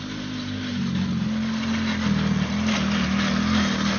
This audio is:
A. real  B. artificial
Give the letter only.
A